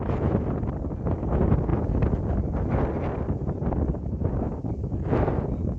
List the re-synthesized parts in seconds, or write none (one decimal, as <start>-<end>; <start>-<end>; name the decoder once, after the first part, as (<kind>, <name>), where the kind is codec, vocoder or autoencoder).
none

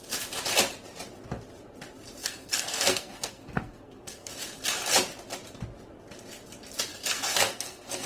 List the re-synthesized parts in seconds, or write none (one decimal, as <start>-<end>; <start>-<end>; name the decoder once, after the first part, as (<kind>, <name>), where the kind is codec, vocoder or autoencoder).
2.2-4.3 (codec, SNAC); 6.9-8.1

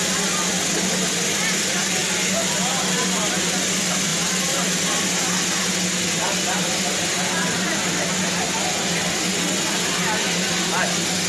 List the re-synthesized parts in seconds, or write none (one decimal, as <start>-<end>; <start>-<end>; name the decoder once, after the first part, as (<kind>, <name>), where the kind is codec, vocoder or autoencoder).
none

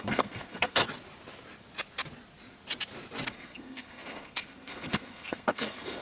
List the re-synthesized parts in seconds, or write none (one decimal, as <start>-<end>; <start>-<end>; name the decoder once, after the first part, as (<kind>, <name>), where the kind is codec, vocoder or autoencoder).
0.0-0.8 (codec, SNAC); 3.3-6.0

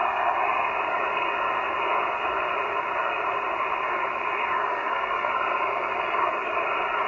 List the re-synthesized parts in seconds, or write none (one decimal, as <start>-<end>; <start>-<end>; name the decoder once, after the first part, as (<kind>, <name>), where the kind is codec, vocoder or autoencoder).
4.6-5.3 (codec, SNAC)